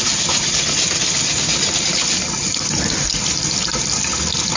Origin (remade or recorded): recorded